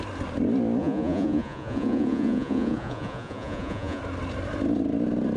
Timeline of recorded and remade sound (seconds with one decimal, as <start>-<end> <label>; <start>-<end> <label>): 0.0-0.8 recorded; 0.8-4.0 remade; 4.0-5.4 recorded